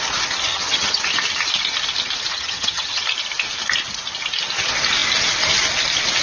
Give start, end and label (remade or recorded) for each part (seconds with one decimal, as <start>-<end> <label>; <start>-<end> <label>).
0.0-0.5 recorded; 0.5-1.0 remade; 1.0-2.3 recorded; 2.3-3.0 remade; 3.0-6.2 recorded